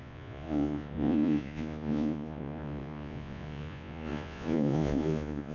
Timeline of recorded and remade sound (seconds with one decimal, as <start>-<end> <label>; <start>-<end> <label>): 0.0-5.5 remade